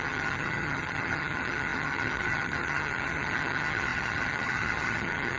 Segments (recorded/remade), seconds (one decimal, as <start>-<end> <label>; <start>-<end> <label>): 0.0-5.4 remade